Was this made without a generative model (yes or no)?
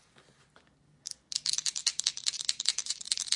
yes